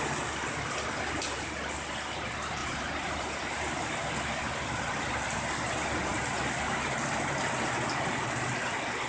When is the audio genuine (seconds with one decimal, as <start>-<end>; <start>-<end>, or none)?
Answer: 0.0-2.6; 3.8-9.1